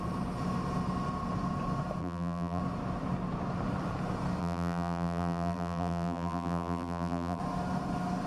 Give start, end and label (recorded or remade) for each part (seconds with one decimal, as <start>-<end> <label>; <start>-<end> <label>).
0.0-2.0 recorded; 2.0-2.6 remade; 2.6-4.4 recorded; 4.4-7.4 remade; 7.4-8.3 recorded